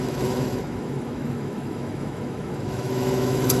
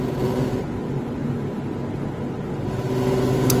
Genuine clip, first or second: second